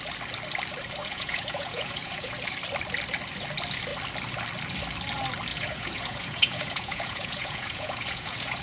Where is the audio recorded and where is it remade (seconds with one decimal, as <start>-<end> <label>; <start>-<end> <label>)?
0.0-1.0 recorded; 1.0-2.3 remade; 2.3-5.5 recorded; 5.5-8.6 remade